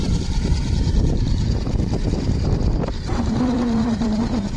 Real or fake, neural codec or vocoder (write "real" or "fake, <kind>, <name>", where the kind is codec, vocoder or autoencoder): fake, vocoder, BigVGAN v2